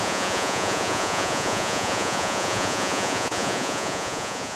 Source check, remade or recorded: remade